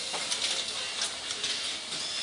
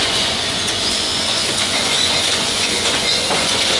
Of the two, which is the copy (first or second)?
second